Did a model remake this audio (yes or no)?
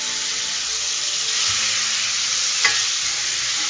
no